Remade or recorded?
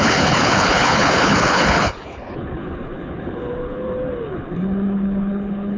remade